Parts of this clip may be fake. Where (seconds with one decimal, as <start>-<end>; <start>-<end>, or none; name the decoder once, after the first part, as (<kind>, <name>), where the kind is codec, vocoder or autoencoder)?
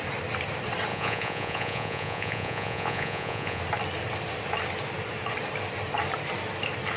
0.9-3.6 (vocoder, Vocos)